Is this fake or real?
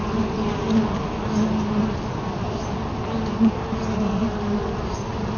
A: real